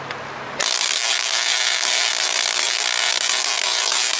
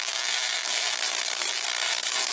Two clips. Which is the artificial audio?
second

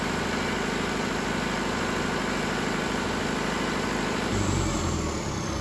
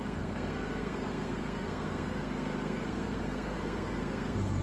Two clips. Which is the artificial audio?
second